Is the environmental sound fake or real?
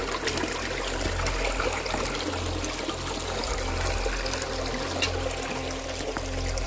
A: real